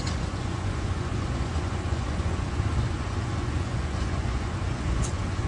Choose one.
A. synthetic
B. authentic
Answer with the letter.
A